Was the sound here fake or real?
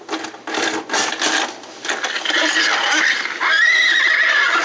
real